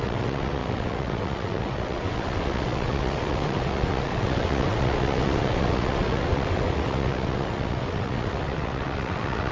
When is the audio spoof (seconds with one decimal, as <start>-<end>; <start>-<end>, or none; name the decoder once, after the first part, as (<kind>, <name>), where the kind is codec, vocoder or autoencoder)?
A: 0.0-9.5 (vocoder, WaveNeXt)